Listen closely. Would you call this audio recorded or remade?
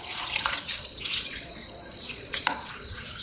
remade